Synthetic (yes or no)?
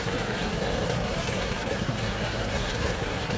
yes